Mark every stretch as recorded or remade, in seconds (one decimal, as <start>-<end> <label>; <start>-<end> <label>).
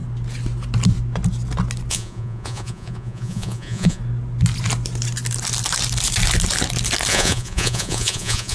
0.0-1.9 recorded; 1.9-4.0 remade; 4.0-7.1 recorded; 7.1-8.5 remade